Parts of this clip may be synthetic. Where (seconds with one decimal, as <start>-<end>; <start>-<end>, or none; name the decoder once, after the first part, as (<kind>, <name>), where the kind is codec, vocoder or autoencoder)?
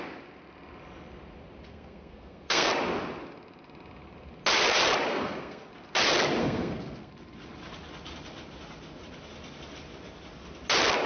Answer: 1.7-2.7 (codec, SNAC); 5.1-5.7; 6.4-7.1